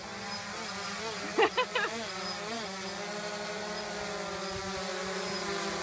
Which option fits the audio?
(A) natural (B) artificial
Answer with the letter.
A